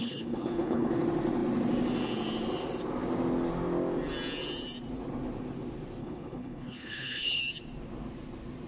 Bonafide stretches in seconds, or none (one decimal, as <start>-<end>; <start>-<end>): 0.9-6.0; 7.4-8.7